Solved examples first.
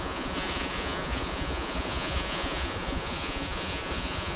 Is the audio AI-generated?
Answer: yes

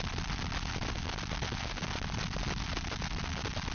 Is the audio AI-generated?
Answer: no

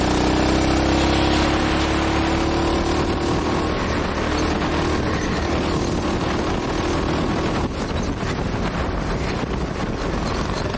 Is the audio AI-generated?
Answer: no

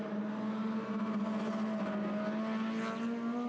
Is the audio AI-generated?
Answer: no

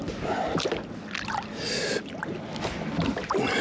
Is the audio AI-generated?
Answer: no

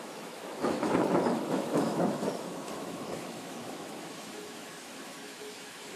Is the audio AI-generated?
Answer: yes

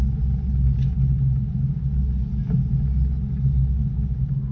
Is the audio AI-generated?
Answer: no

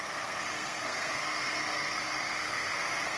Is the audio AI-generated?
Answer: yes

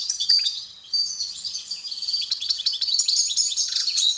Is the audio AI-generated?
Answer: yes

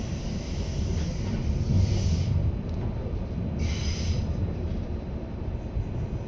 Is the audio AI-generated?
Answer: no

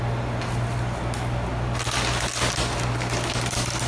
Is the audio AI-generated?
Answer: no